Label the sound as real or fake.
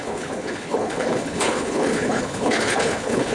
fake